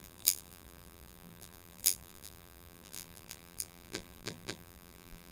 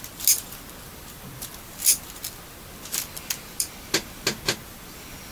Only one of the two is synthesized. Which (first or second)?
first